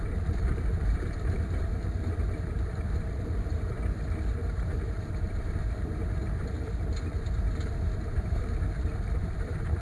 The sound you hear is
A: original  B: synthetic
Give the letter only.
B